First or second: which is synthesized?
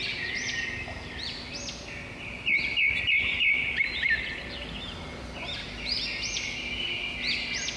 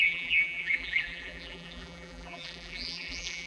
second